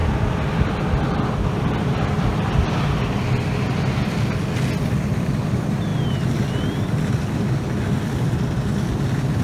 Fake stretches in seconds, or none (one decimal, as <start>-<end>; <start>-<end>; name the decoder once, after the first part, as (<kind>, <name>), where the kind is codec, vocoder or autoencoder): 0.0-3.8 (vocoder, BigVGAN v2)

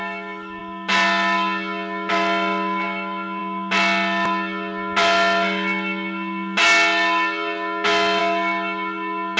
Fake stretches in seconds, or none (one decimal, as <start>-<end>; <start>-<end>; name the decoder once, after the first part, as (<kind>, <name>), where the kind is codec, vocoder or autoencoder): none